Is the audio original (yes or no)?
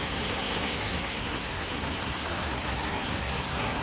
no